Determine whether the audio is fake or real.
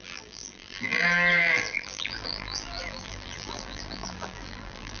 fake